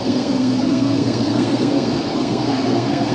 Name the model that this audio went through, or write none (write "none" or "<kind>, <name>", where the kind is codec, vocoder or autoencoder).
codec, SNAC